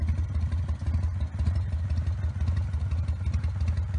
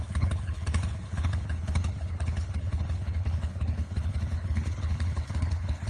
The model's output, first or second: second